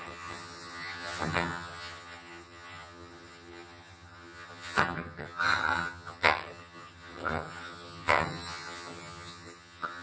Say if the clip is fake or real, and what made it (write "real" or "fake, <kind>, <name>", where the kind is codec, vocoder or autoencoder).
fake, vocoder, HiFi-GAN